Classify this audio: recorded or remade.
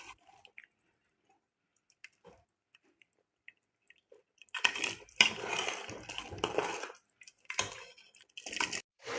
recorded